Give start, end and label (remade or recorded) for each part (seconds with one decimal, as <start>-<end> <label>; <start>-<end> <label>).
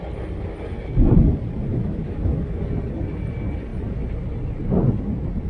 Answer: 0.0-1.7 recorded; 1.7-2.6 remade; 2.6-5.5 recorded